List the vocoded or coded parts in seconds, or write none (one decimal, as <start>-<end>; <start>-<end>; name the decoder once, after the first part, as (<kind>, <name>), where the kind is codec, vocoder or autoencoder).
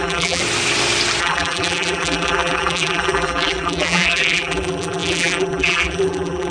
0.0-0.4 (vocoder, BigVGAN v2); 1.2-6.5